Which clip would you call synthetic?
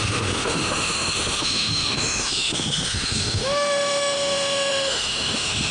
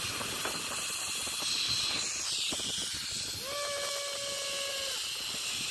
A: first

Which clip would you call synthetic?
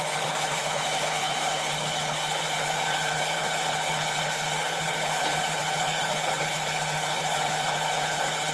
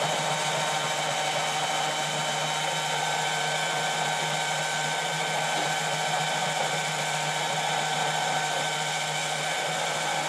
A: first